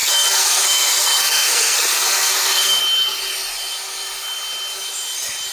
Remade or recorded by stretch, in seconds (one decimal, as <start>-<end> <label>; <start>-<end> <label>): 0.0-2.8 remade; 2.8-5.5 recorded